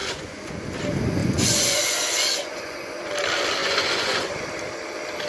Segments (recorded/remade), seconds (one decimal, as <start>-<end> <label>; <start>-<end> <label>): 0.0-0.6 remade; 0.6-1.2 recorded; 1.2-3.1 remade; 3.1-3.6 recorded; 3.6-4.3 remade; 4.3-5.3 recorded